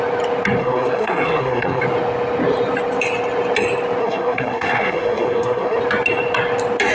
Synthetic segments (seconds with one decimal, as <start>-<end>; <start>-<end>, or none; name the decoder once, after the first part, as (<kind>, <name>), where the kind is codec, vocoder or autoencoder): 0.6-1.8 (codec, SNAC); 4.0-5.8